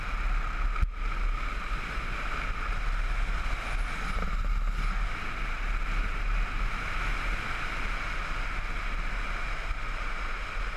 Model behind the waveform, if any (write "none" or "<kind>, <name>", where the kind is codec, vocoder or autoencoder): none